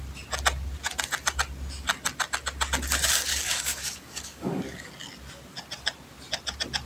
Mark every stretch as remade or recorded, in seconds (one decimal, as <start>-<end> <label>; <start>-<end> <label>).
0.0-3.3 recorded; 3.3-4.9 remade; 4.9-6.9 recorded